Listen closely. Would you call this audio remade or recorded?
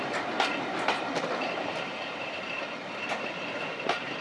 remade